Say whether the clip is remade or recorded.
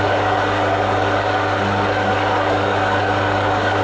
remade